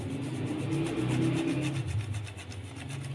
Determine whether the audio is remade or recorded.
recorded